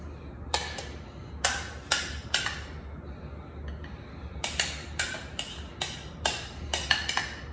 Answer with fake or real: real